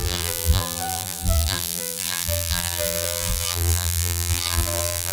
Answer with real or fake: fake